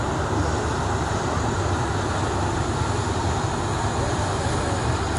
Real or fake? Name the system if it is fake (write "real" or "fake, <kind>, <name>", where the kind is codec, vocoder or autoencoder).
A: real